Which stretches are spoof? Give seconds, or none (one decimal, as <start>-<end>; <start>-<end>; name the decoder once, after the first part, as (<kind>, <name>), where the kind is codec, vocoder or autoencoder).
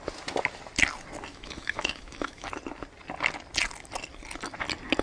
1.3-2.5 (autoencoder, DAC-VAE)